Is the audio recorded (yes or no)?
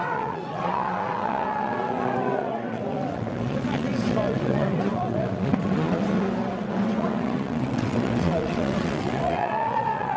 no